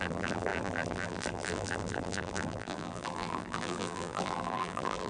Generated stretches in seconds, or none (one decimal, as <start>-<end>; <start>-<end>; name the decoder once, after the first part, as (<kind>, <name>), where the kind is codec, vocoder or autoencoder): 0.0-5.1 (vocoder, BigVGAN v2)